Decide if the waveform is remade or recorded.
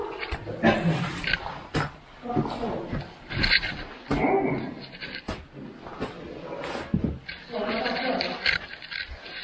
recorded